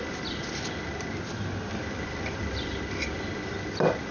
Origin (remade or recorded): recorded